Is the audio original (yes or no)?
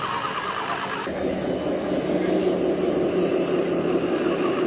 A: yes